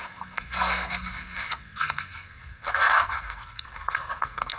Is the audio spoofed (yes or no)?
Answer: yes